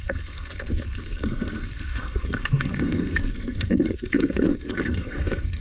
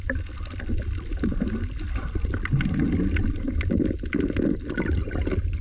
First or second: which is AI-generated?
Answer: first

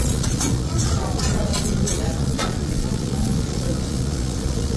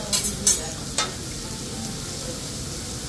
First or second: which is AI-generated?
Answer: first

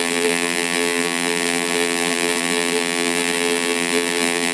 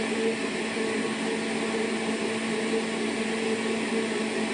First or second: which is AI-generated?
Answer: first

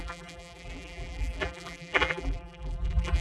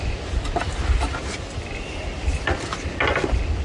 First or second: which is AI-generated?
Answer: first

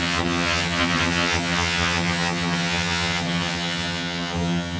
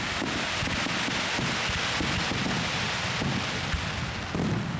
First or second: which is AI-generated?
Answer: first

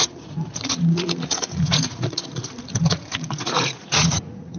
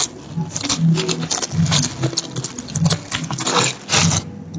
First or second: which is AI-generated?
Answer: first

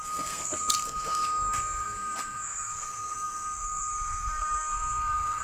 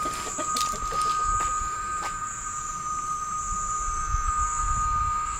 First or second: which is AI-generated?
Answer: first